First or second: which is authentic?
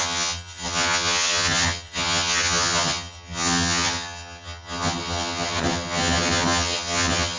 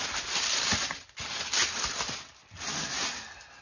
second